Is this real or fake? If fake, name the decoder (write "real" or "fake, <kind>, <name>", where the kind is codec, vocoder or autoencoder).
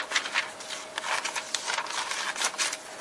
real